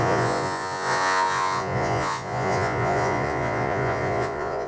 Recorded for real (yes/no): no